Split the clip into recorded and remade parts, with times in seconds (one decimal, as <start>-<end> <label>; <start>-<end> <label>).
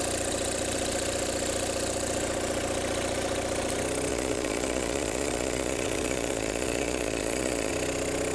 0.0-4.1 recorded; 4.1-7.7 remade; 7.7-8.3 recorded